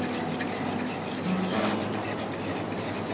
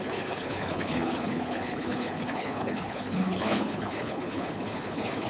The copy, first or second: second